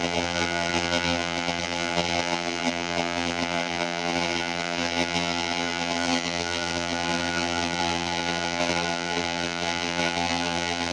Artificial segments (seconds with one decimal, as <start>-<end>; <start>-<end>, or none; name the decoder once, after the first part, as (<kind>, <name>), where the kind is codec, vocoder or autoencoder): 0.0-10.9 (vocoder, BigVGAN v2)